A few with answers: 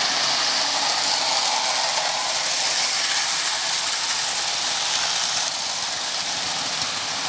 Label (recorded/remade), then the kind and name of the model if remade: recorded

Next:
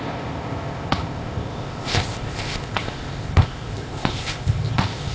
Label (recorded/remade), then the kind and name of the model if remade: remade, codec, ZipCodec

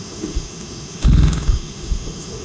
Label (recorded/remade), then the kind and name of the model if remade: remade, autoencoder, DAC-VAE